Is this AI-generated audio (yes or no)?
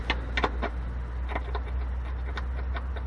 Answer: no